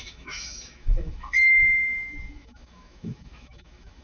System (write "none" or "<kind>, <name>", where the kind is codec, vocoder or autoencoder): autoencoder, DAC-VAE